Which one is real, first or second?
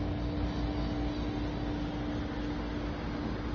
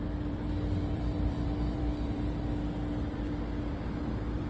first